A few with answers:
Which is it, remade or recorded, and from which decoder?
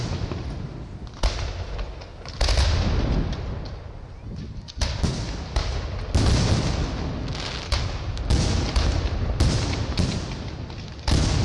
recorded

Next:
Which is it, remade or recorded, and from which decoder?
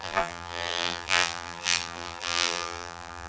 remade, vocoder, BigVGAN v2